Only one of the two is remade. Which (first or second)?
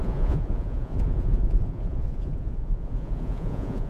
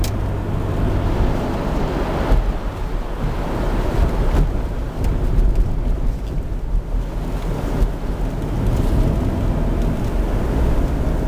first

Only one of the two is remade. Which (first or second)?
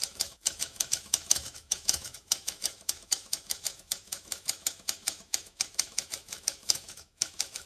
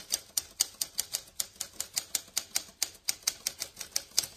first